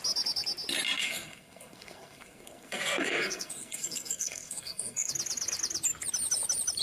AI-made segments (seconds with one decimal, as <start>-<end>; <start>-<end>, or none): 1.0-5.1